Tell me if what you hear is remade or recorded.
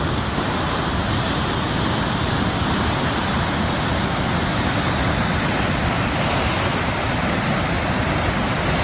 recorded